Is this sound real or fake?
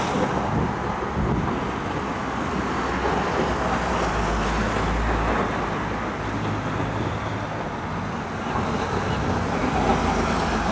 real